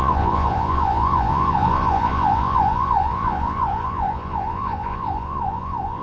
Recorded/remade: remade